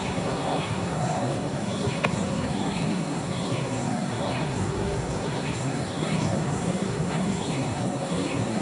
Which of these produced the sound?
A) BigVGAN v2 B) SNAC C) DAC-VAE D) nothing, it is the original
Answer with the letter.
B